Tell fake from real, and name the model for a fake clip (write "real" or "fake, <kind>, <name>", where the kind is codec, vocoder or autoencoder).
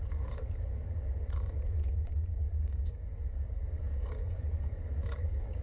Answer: fake, codec, DAC